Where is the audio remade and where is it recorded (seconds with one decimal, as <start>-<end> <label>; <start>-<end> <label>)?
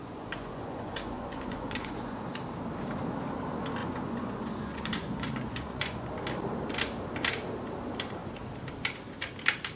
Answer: 0.0-2.3 remade; 2.3-3.8 recorded; 3.8-6.1 remade; 6.1-9.8 recorded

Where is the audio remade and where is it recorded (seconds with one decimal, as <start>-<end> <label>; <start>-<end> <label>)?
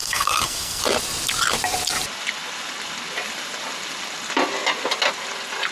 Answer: 0.0-0.8 remade; 0.8-5.7 recorded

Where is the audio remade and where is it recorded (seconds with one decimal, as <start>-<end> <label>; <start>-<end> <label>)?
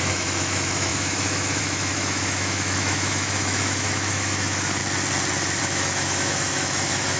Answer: 0.0-4.8 remade; 4.8-5.6 recorded; 5.6-7.2 remade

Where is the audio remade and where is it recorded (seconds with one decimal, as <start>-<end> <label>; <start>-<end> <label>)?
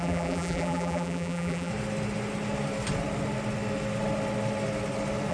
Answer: 0.0-1.7 remade; 1.7-5.3 recorded